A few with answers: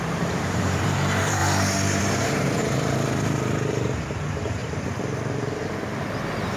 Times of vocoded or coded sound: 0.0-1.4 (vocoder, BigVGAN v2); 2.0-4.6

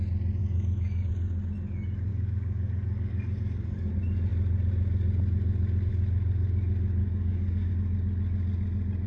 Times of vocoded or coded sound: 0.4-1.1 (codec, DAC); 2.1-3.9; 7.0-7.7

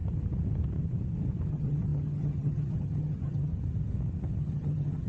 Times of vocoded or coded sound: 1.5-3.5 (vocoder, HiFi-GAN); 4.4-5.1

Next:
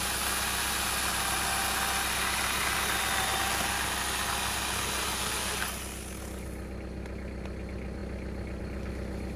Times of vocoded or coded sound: none